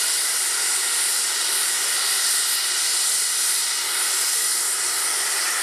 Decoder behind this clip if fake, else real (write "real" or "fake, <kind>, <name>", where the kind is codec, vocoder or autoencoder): real